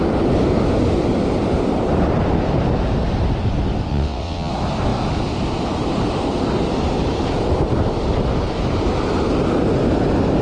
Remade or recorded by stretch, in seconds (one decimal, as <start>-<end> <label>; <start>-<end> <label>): 0.0-3.9 recorded; 3.9-4.5 remade; 4.5-10.4 recorded